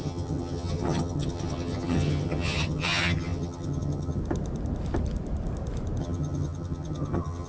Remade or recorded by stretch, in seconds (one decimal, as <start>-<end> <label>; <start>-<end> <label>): 0.0-4.2 remade; 4.2-6.0 recorded; 6.0-7.5 remade